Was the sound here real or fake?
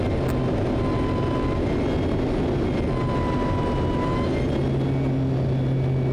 real